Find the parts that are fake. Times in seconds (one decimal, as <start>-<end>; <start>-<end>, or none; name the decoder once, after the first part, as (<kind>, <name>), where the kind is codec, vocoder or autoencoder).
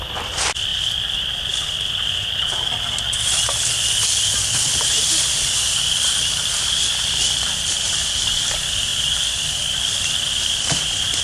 none